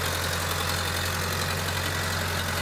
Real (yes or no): yes